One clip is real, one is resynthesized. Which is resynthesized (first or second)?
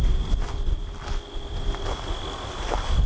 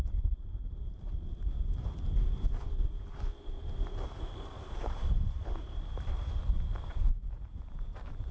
second